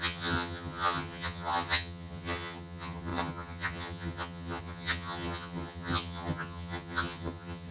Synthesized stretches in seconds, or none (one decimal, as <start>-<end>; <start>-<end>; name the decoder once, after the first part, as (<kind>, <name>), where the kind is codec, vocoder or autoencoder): 0.0-7.7 (vocoder, HiFi-GAN)